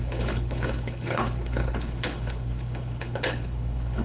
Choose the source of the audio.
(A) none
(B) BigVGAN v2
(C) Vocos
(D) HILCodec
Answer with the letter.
D